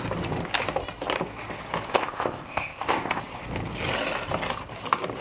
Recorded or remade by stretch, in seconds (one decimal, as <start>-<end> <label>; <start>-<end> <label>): 0.0-1.9 recorded; 1.9-3.2 remade; 3.2-5.2 recorded